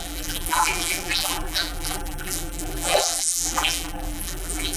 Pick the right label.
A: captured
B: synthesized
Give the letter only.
B